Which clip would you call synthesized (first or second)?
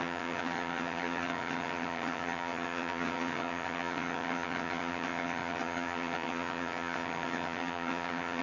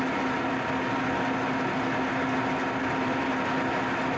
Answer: first